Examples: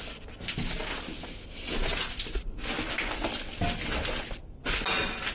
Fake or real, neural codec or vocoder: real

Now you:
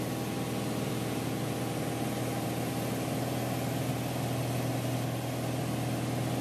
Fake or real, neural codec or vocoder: real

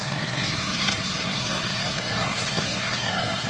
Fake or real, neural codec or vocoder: fake, codec, SNAC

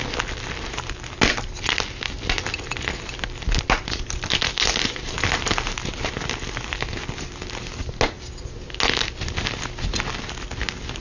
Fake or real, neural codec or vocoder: real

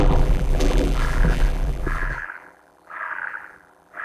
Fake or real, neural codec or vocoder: fake, vocoder, BigVGAN v2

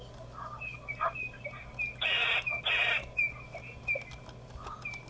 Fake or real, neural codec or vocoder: real